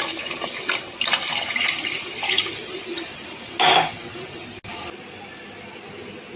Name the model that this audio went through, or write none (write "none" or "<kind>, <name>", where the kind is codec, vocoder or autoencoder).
none